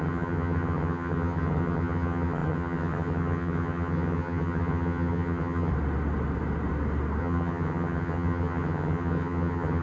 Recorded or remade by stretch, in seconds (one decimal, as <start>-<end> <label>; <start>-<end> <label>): 0.0-5.7 remade; 5.7-7.2 recorded; 7.2-9.8 remade